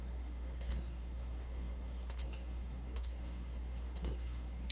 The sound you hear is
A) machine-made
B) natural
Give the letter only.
A